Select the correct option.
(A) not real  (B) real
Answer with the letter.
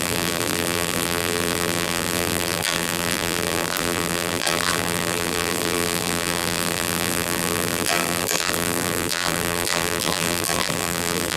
A